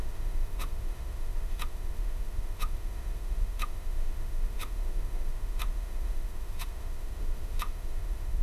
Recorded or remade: remade